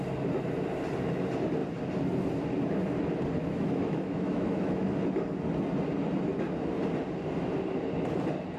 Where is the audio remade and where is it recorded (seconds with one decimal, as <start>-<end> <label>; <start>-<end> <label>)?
0.0-3.4 recorded; 3.4-4.9 remade; 4.9-8.6 recorded